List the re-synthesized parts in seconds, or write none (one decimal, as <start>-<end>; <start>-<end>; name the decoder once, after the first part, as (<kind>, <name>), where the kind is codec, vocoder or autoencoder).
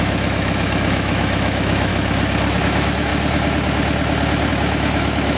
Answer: 0.0-1.9 (autoencoder, DAC-VAE); 2.6-3.1; 4.5-5.4